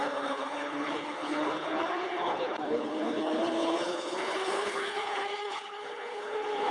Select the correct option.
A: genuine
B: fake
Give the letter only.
B